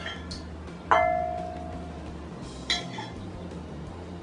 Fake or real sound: real